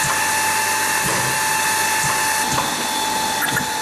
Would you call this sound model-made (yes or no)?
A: no